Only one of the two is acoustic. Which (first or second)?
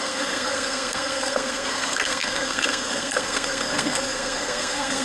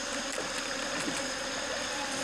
second